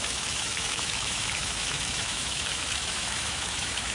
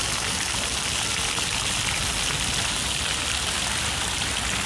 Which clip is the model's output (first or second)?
first